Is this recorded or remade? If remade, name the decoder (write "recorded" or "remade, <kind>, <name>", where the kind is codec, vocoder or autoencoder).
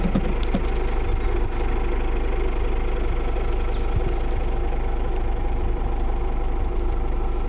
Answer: recorded